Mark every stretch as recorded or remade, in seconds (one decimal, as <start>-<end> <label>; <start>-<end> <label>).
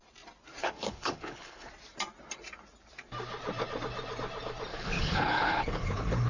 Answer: 0.0-0.6 recorded; 0.6-1.7 remade; 1.7-4.7 recorded; 4.7-6.3 remade